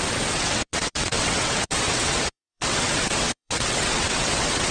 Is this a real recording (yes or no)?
no